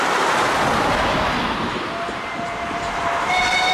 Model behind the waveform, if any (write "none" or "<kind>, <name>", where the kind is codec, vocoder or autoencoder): none